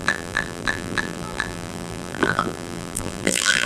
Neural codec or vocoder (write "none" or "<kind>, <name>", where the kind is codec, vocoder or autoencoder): vocoder, BigVGAN v2